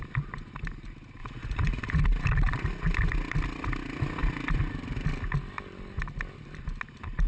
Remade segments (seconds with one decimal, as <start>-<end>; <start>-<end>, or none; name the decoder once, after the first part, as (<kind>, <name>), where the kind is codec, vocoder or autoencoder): 1.2-2.0 (vocoder, Vocos)